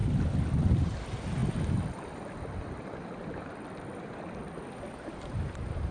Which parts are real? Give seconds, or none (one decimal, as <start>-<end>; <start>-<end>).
0.0-0.7; 1.4-4.9